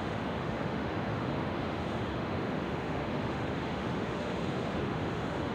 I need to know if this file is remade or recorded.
remade